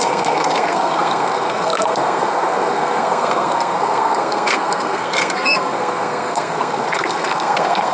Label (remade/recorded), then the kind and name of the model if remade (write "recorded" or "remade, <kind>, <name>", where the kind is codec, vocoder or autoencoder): remade, codec, SNAC